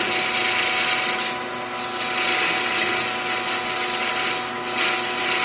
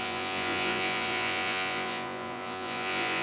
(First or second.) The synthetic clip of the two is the second